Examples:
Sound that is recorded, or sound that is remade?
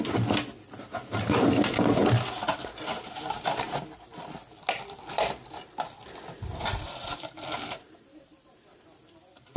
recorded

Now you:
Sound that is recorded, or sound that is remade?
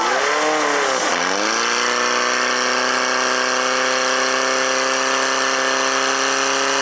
recorded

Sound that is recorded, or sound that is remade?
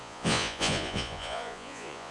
remade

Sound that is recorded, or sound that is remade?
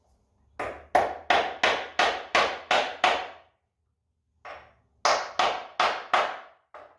recorded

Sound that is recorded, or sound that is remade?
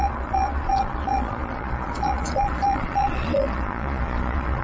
remade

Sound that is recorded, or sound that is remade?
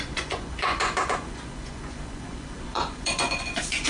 remade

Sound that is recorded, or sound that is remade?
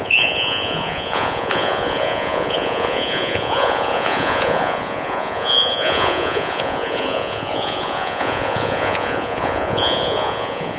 remade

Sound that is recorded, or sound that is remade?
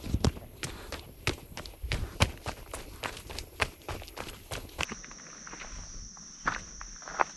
recorded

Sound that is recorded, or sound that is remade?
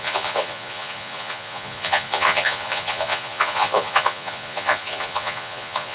remade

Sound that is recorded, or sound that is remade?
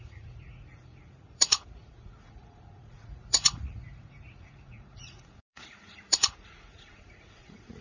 remade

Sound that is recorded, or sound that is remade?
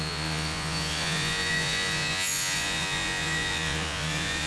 remade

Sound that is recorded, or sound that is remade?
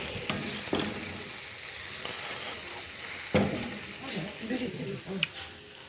recorded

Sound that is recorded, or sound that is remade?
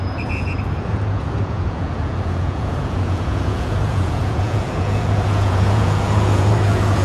remade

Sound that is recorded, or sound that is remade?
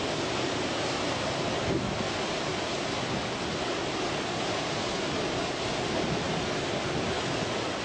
recorded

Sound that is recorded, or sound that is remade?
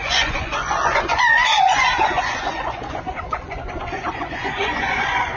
remade